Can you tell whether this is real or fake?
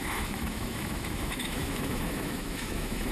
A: fake